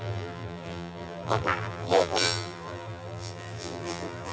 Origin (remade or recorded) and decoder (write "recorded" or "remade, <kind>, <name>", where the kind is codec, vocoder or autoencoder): remade, vocoder, BigVGAN v2